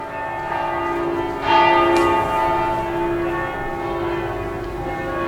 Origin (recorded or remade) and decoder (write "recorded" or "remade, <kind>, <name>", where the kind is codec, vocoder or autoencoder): recorded